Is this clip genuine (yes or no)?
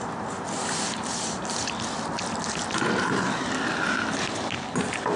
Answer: yes